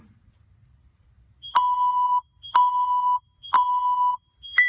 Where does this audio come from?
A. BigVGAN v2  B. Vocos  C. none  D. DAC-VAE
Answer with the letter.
A